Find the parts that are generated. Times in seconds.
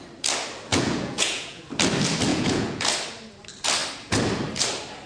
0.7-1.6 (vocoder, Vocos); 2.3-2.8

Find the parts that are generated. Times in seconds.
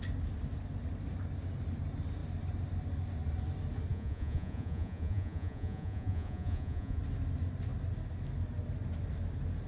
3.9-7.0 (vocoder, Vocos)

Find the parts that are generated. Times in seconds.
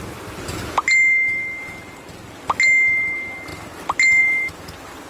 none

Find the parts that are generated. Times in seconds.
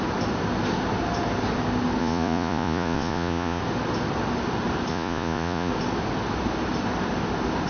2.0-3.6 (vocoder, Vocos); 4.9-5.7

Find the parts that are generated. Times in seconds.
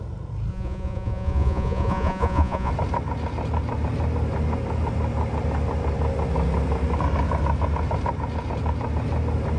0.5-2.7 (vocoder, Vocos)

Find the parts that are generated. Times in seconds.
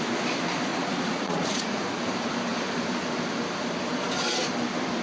0.7-2.0 (vocoder, Vocos)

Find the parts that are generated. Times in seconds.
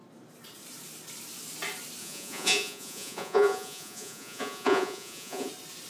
2.0-5.5 (vocoder, Vocos)